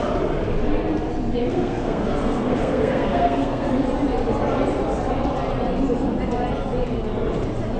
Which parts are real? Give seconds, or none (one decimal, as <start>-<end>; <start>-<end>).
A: 0.0-1.5; 3.7-7.8